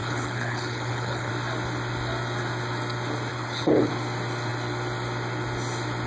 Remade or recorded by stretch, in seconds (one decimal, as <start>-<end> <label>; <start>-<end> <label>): 0.0-1.3 remade; 1.3-3.3 recorded; 3.3-3.9 remade; 3.9-6.1 recorded